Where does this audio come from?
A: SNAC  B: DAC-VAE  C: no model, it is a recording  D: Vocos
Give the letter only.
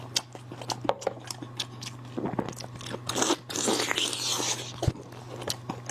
C